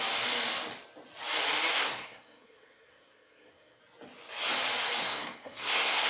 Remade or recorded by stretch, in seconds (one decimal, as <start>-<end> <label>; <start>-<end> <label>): 0.0-1.7 recorded; 1.7-3.8 remade; 3.8-5.0 recorded; 5.0-6.1 remade